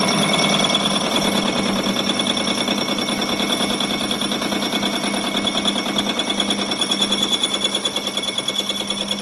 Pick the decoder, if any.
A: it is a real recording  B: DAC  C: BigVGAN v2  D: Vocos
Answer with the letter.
A